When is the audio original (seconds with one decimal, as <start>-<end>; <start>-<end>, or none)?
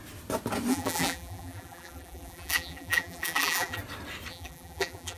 0.0-0.7; 3.8-4.3